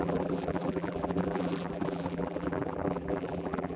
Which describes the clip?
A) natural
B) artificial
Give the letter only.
B